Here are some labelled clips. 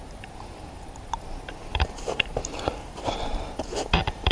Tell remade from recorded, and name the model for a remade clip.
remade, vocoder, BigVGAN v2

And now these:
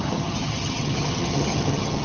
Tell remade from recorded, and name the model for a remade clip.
remade, vocoder, HiFi-GAN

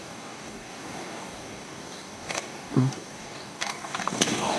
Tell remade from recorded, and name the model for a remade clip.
remade, codec, DAC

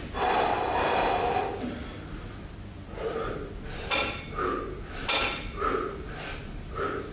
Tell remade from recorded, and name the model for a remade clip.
recorded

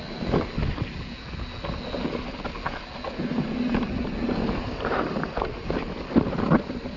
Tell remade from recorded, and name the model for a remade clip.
recorded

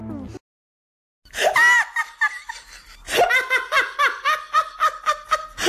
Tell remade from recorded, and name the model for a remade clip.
recorded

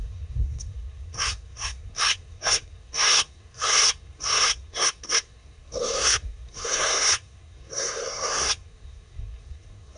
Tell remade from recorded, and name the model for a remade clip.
remade, codec, SNAC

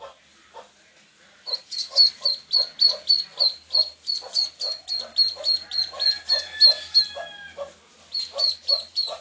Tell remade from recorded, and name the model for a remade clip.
recorded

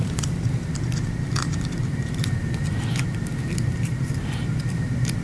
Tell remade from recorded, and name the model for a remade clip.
remade, vocoder, BigVGAN v2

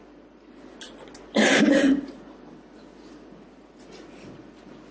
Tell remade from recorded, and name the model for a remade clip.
recorded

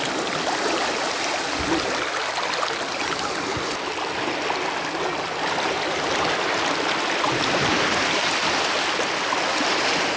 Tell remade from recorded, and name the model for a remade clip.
recorded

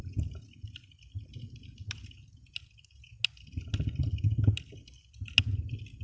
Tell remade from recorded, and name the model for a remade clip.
recorded